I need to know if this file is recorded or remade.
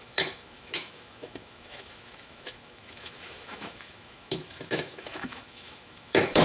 remade